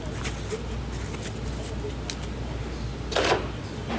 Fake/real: real